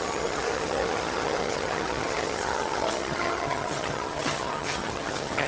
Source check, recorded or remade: remade